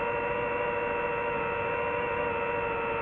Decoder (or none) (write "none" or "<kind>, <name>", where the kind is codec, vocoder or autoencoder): none